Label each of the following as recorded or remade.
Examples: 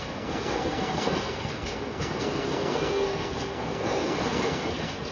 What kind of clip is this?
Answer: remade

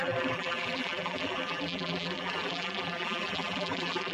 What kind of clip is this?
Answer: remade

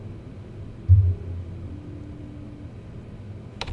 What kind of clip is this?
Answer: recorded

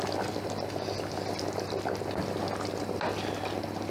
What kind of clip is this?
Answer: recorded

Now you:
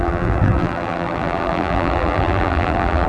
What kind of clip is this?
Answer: remade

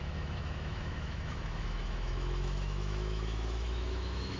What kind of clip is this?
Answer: remade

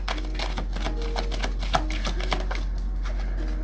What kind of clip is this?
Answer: recorded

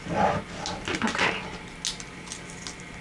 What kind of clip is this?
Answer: recorded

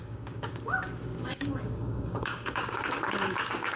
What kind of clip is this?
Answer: remade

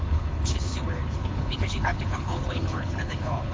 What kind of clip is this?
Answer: remade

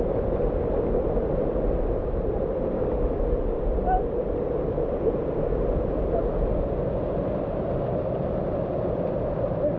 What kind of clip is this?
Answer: recorded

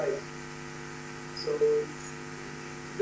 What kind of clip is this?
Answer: recorded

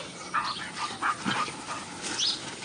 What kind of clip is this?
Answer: recorded